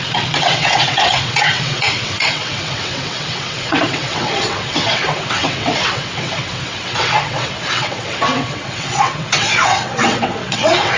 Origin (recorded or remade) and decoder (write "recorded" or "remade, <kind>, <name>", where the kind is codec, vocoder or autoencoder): remade, vocoder, WaveNeXt